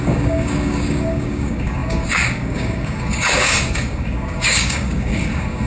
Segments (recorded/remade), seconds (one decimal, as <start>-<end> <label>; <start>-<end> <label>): 0.0-5.7 remade